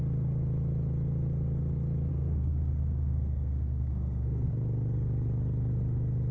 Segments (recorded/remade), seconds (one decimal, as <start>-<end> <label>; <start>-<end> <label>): 0.0-2.1 recorded; 2.1-4.5 remade; 4.5-6.3 recorded